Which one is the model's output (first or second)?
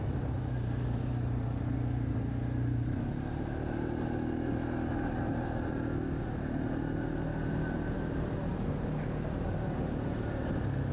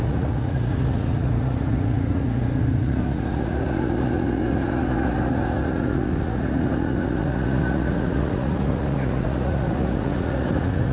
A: second